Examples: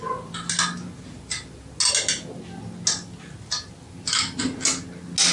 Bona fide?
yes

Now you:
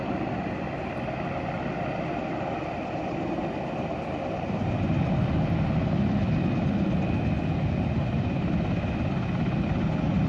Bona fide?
yes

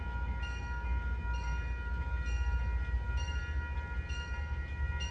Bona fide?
yes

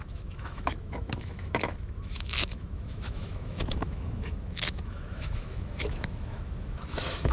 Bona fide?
no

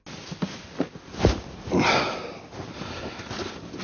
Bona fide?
yes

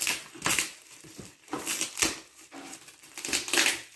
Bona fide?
yes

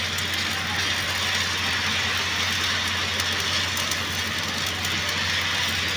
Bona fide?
yes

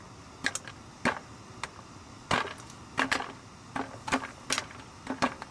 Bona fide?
yes